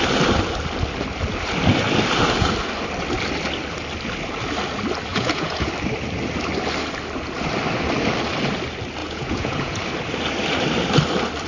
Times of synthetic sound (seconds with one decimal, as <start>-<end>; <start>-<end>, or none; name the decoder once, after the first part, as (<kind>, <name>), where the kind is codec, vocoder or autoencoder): 5.1-5.7 (vocoder, Vocos); 9.0-9.8